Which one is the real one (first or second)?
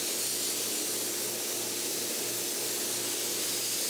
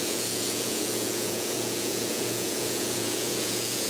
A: first